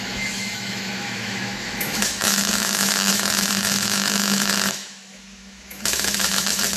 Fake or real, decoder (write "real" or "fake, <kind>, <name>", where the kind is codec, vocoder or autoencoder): fake, autoencoder, DAC-VAE